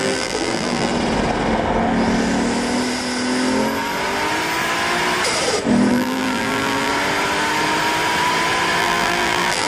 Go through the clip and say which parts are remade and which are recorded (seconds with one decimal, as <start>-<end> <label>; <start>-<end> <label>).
0.0-0.9 remade; 0.9-5.9 recorded; 5.9-6.9 remade; 6.9-8.8 recorded; 8.8-9.7 remade